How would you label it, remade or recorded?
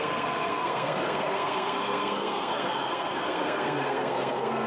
remade